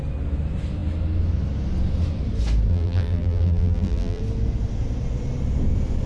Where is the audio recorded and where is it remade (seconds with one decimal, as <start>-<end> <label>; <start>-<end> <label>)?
0.0-2.7 recorded; 2.7-4.2 remade; 4.2-6.1 recorded